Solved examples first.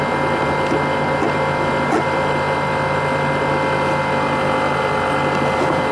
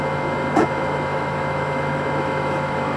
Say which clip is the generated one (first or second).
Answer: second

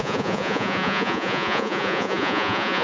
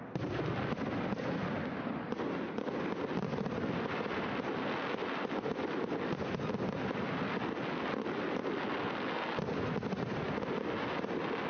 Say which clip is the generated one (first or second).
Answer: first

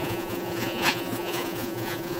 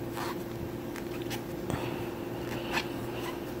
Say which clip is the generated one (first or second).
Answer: first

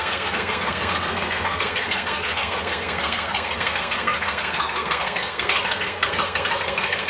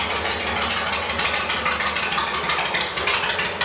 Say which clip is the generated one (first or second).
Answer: first